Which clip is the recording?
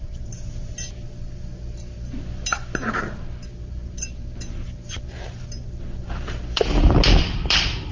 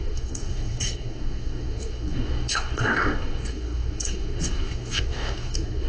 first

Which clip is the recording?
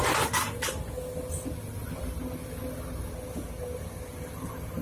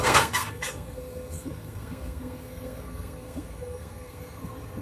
first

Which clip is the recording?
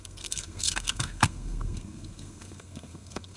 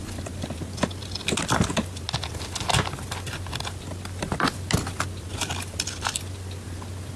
second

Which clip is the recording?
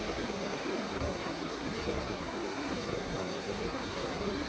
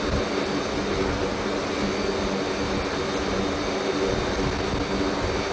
second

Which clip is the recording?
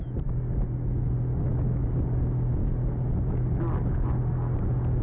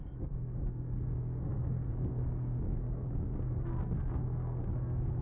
first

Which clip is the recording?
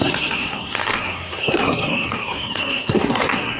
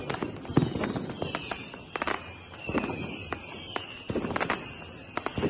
second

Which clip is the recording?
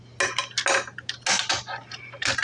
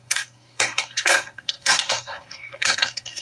first